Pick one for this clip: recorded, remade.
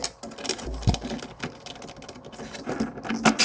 recorded